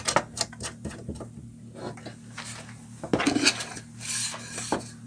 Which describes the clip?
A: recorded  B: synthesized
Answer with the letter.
A